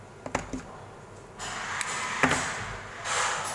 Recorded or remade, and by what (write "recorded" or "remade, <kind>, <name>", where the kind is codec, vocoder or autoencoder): recorded